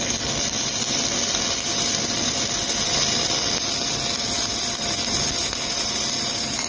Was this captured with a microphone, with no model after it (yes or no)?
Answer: yes